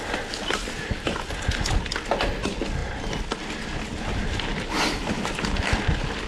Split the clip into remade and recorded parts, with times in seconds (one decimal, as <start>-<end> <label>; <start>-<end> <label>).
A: 0.0-6.3 recorded